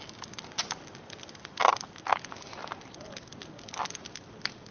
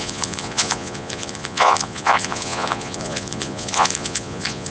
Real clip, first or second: first